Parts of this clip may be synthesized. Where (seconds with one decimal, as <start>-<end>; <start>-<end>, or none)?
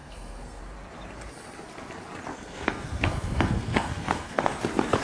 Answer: 0.0-0.6; 2.3-4.5